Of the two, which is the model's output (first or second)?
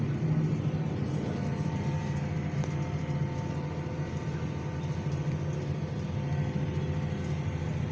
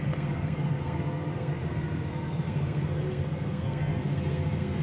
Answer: second